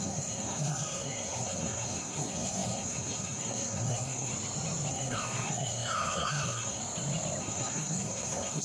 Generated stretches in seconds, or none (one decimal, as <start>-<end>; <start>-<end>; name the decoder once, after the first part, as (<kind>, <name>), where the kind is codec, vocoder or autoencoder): 0.0-4.3 (codec, SNAC); 4.9-6.8; 7.4-8.6